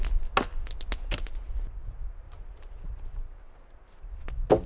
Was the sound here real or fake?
real